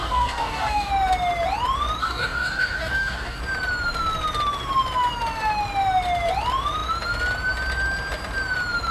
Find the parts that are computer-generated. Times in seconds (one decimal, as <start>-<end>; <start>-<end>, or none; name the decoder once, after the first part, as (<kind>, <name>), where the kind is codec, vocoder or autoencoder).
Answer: 0.0-0.9 (codec, DAC); 2.0-3.4

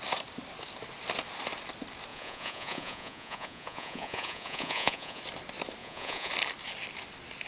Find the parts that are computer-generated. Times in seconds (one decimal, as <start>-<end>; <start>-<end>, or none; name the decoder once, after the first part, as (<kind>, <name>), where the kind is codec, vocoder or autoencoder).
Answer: 2.1-5.2 (vocoder, Vocos); 5.8-6.3